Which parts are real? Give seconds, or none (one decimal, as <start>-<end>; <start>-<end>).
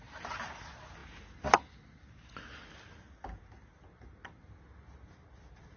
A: 0.0-5.8